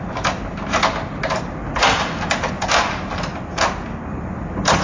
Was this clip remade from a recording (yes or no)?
yes